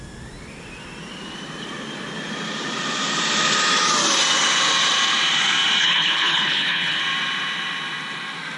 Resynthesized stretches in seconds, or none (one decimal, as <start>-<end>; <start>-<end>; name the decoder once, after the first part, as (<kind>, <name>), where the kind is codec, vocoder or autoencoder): 5.8-7.0 (codec, HILCodec)